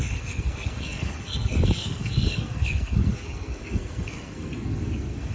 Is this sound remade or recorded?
remade